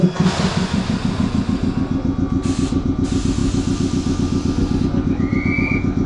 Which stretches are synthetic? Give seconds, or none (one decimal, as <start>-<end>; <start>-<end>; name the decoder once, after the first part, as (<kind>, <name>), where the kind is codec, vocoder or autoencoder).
none